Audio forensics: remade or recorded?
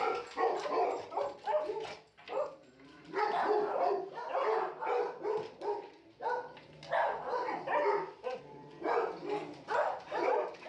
recorded